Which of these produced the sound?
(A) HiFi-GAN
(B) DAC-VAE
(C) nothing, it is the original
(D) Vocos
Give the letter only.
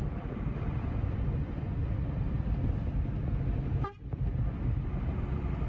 C